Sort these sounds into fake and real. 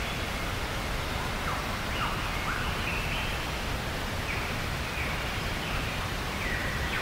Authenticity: fake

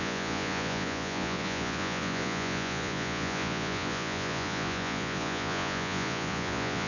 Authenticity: fake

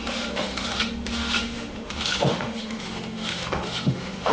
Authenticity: fake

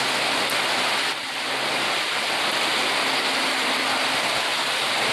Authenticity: real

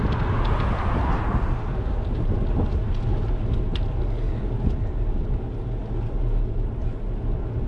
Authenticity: real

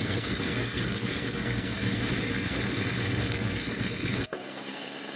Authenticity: fake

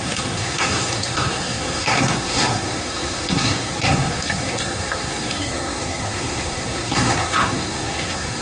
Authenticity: fake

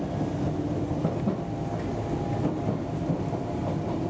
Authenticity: real